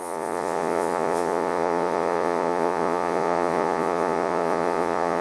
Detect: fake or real fake